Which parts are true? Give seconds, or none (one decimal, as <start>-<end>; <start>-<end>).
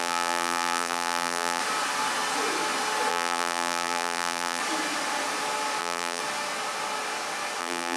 1.6-3.1; 4.6-5.8; 6.2-7.6